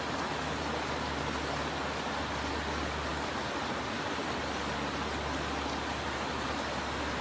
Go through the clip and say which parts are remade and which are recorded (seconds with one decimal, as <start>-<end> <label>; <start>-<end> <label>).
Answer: 0.0-3.1 recorded; 3.1-3.8 remade; 3.8-7.2 recorded